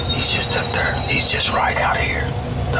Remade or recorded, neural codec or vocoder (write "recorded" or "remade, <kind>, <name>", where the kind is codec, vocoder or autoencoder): recorded